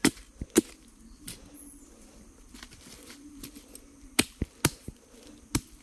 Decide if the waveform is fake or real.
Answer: real